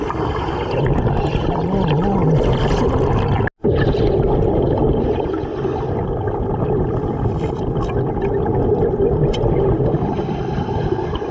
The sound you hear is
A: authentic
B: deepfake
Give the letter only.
A